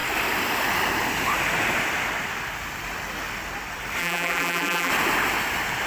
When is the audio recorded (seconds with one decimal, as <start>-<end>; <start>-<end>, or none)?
0.0-4.0; 4.9-5.9